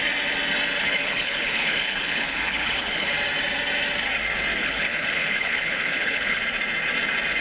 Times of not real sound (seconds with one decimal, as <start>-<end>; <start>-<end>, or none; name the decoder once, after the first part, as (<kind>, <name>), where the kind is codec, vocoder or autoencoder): 0.8-3.1 (codec, HILCodec); 4.6-6.4